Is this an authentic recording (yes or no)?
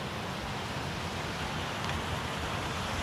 yes